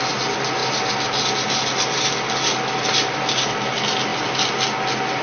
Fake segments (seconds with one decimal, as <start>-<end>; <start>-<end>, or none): none